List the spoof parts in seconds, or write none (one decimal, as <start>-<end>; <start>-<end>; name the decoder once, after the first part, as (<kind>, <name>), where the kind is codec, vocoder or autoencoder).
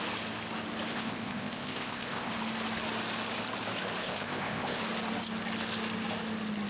0.9-2.3 (codec, ZipCodec); 4.0-4.8